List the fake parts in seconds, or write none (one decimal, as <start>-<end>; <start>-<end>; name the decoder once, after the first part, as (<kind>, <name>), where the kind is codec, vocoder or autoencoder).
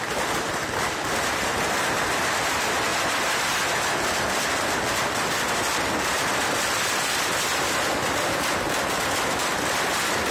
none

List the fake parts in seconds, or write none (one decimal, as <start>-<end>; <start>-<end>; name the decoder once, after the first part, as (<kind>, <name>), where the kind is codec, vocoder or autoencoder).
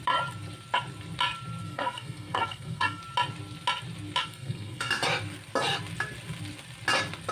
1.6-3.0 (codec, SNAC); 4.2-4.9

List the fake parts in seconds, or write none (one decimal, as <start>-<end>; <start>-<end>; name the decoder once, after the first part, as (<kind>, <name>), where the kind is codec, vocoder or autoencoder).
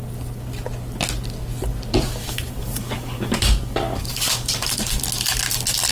2.2-5.0 (codec, DAC)